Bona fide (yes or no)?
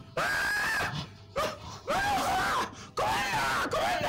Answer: yes